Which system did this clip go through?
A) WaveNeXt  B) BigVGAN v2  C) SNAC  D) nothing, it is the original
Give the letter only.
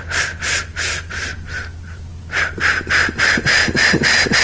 D